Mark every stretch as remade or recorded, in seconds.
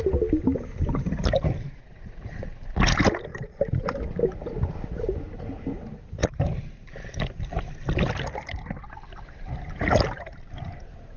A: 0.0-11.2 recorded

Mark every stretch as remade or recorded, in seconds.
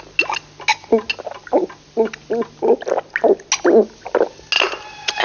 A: 0.0-5.2 recorded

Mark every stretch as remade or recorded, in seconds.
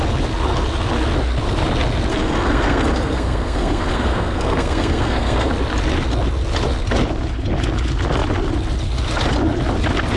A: 0.0-2.1 recorded; 2.1-5.5 remade; 5.5-10.2 recorded